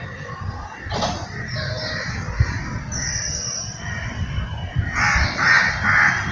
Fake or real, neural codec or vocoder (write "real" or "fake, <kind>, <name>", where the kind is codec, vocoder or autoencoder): real